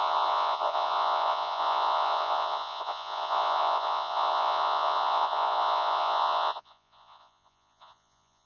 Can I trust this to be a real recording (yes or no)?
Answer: no